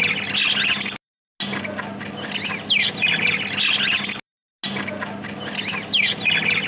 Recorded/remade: recorded